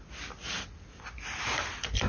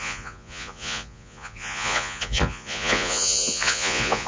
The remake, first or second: second